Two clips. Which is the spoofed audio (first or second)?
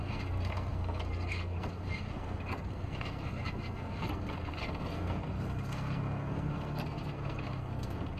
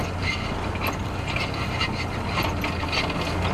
first